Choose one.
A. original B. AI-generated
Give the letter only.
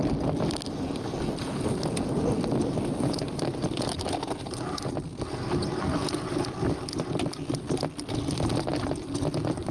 A